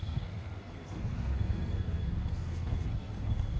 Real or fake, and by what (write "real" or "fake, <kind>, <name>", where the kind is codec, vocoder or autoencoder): fake, codec, SNAC